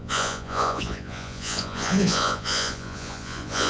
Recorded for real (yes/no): no